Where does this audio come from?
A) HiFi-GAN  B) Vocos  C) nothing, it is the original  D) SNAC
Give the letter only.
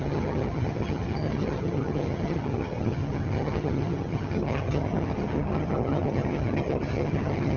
A